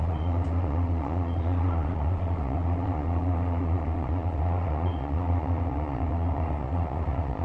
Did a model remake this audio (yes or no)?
yes